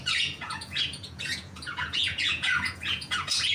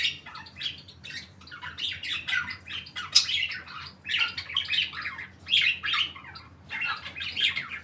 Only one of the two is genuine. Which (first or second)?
second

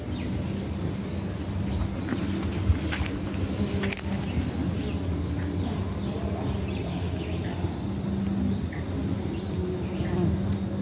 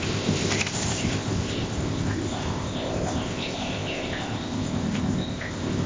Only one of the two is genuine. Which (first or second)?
first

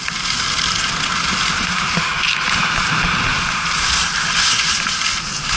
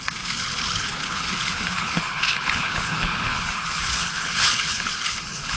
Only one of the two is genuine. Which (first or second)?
first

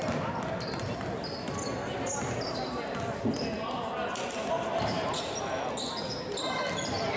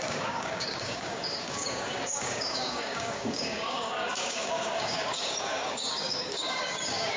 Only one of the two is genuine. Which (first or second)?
first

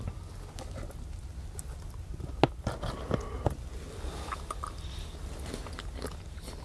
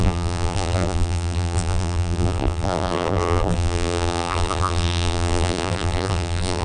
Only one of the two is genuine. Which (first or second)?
first